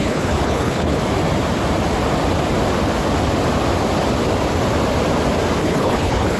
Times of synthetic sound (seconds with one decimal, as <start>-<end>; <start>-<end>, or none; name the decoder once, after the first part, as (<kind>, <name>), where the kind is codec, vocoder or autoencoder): 0.0-1.0 (codec, HILCodec); 5.6-6.4